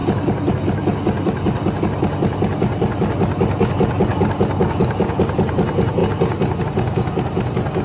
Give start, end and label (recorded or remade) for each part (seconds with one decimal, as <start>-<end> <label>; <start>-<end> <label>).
0.0-4.1 recorded; 4.1-5.2 remade; 5.2-7.8 recorded